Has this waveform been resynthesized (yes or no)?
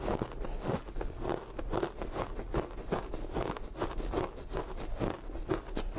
no